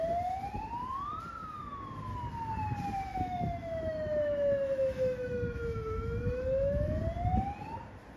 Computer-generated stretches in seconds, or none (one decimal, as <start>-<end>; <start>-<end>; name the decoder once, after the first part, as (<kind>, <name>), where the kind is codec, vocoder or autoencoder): 3.1-7.0 (autoencoder, DAC-VAE)